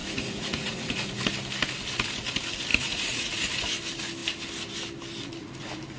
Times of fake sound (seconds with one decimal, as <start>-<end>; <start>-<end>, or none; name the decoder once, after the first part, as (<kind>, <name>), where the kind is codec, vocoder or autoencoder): 0.0-1.2 (vocoder, Vocos); 2.7-3.7